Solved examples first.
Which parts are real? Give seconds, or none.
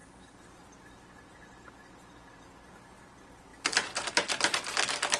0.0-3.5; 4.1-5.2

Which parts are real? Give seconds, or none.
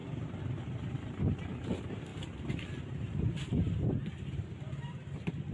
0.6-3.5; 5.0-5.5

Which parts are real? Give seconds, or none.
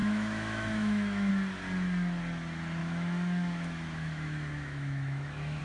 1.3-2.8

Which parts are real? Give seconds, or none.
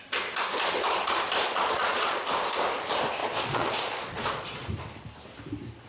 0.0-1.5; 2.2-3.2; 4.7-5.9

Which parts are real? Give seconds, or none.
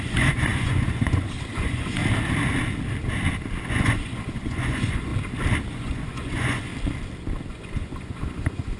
2.0-3.6; 5.1-5.7; 6.7-7.5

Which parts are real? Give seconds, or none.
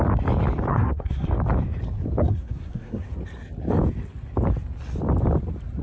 0.0-0.7; 1.3-2.2; 3.0-5.8